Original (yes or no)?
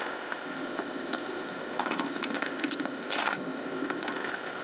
no